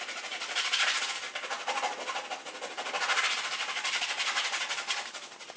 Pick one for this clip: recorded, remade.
recorded